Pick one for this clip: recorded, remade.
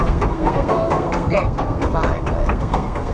remade